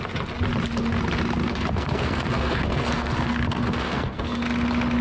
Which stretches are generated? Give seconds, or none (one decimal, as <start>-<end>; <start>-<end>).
1.4-4.4